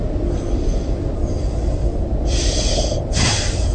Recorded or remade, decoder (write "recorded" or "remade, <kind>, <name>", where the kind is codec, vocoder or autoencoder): recorded